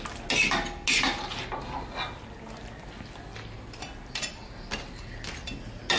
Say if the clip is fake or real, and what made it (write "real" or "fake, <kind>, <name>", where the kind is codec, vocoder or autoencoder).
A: real